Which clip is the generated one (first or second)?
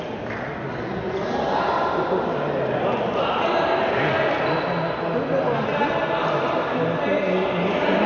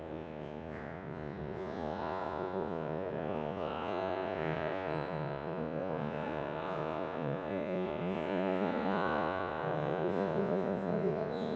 second